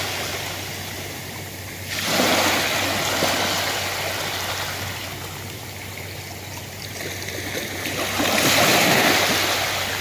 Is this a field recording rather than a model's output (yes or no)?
yes